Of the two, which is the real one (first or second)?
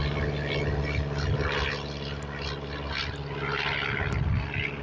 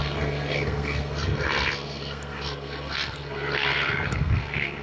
first